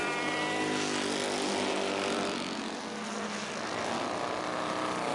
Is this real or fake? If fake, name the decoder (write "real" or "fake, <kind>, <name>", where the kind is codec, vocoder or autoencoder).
real